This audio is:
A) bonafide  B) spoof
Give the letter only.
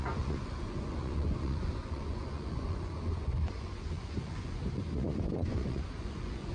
B